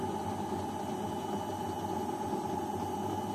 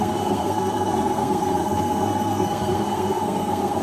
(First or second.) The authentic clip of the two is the first